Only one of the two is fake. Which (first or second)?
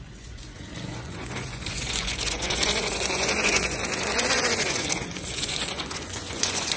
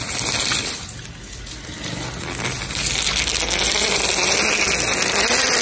first